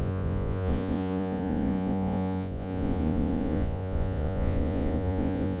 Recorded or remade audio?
remade